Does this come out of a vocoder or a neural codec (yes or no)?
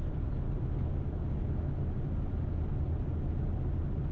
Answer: no